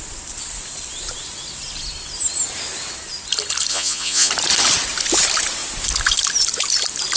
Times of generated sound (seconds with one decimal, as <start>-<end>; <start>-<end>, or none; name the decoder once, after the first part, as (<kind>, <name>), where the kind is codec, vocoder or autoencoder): 3.7-4.3 (vocoder, Vocos)